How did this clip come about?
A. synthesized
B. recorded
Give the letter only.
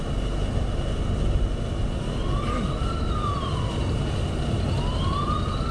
B